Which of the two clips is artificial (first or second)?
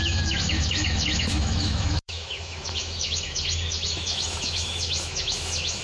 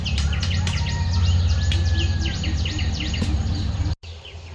first